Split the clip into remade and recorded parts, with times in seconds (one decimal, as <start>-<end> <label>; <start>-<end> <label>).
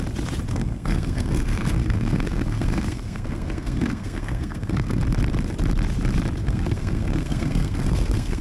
0.0-0.5 recorded; 0.5-5.0 remade; 5.0-6.4 recorded; 6.4-8.4 remade